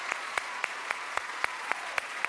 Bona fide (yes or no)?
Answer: no